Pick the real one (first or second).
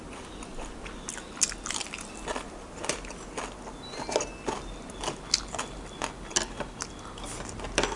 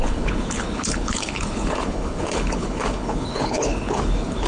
first